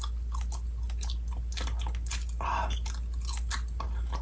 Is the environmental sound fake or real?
real